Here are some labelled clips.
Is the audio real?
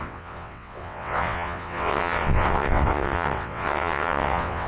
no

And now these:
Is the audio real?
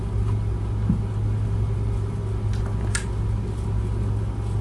yes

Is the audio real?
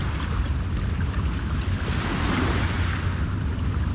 yes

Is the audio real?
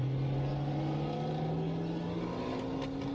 yes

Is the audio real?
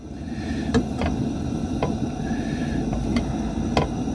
yes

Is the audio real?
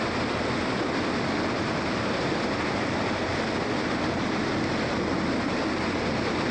yes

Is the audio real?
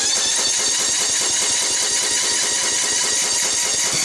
yes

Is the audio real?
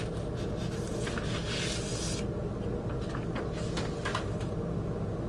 yes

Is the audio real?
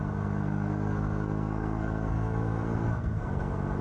no